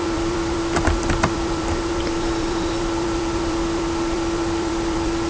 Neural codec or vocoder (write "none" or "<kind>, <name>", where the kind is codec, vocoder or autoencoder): vocoder, BigVGAN v2